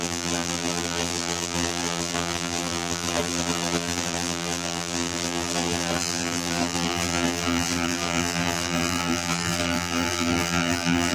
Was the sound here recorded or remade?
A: remade